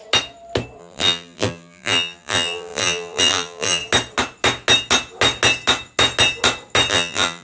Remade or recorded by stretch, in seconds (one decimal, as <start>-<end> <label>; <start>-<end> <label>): 0.0-0.8 recorded; 0.8-3.8 remade; 3.8-6.9 recorded; 6.9-7.4 remade